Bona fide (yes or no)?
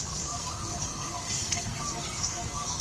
no